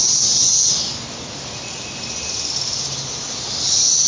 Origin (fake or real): real